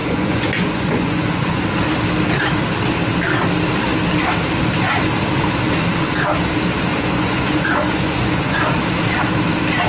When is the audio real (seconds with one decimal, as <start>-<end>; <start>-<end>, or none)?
1.6-6.9; 8.8-9.9